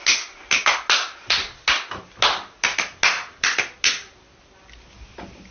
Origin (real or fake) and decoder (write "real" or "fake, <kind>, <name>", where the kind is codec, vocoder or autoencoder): real